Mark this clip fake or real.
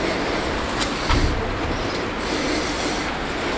real